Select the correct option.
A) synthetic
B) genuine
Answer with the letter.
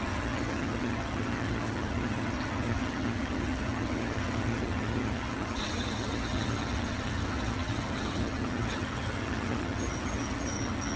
A